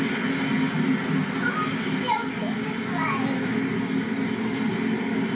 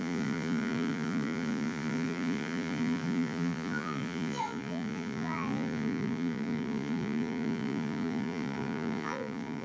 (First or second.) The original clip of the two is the first